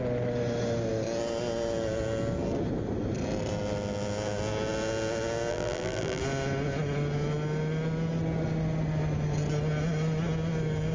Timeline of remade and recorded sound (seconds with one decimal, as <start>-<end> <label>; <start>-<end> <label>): 0.0-5.5 recorded; 5.5-6.2 remade; 6.2-10.9 recorded